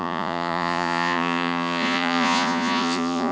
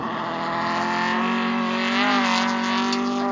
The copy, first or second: first